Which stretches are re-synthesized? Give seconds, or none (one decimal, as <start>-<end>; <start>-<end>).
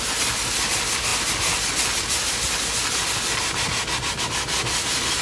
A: none